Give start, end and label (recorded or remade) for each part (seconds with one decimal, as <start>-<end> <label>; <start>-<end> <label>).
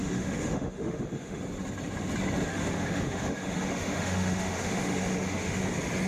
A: 0.0-1.4 remade; 1.4-2.5 recorded; 2.5-5.6 remade; 5.6-6.1 recorded